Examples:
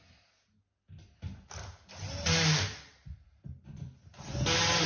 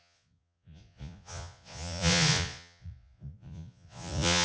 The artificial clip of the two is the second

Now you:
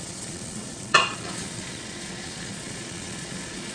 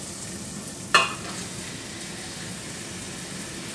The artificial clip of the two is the first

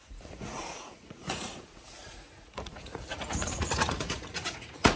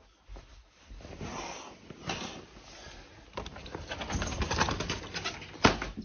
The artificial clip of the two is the first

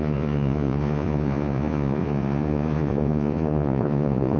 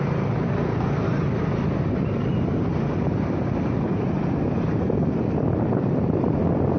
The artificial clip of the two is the first